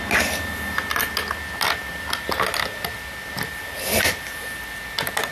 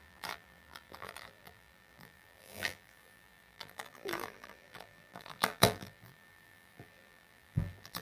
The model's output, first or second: second